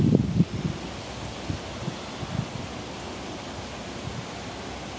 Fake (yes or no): no